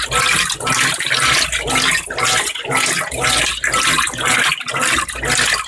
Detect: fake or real real